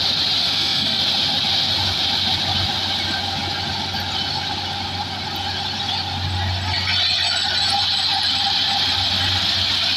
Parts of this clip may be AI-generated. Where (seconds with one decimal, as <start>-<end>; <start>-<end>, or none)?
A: 0.4-1.0